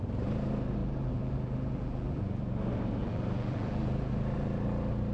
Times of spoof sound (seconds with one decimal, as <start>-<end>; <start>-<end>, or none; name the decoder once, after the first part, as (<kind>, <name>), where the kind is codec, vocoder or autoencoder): 0.8-2.5 (vocoder, BigVGAN v2); 3.0-4.1